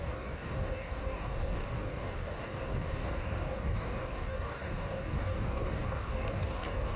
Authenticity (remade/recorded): remade